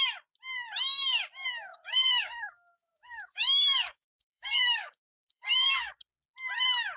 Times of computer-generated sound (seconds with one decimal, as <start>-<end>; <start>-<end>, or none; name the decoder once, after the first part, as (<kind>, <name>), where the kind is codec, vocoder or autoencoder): 1.7-5.9 (codec, DAC)